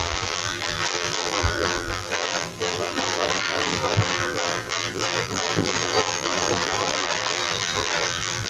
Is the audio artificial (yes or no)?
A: yes